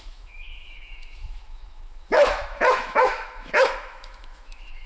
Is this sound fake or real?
fake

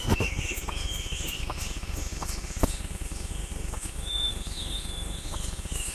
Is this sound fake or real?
fake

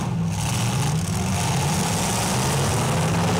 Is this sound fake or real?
real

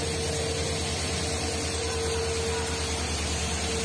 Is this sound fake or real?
real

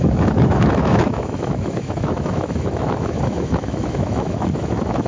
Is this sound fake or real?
fake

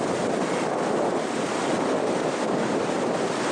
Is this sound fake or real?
real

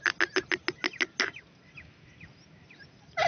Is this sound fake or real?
real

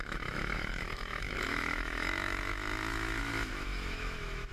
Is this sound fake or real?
fake